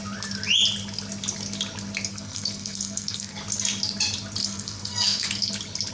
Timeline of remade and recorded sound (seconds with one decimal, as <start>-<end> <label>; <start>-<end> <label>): 0.0-2.1 recorded; 2.1-3.4 remade; 3.4-4.4 recorded; 4.4-5.5 remade; 5.5-5.9 recorded